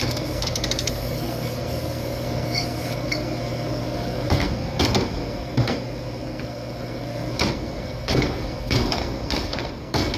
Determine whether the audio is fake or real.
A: fake